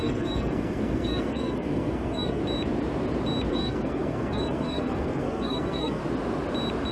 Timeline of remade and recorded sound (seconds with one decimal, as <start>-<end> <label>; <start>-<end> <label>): 0.0-2.4 remade; 2.4-3.5 recorded; 3.5-6.0 remade; 6.0-6.9 recorded